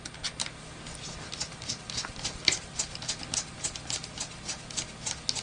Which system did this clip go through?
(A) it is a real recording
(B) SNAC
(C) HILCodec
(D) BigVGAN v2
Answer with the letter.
A